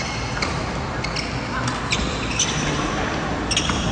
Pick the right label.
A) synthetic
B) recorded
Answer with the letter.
B